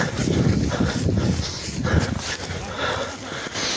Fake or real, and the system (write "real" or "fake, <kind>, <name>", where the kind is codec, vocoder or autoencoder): real